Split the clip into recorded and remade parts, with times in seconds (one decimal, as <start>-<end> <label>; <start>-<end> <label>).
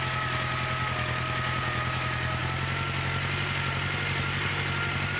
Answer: 0.0-5.2 recorded